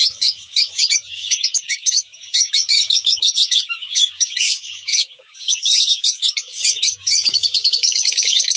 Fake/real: fake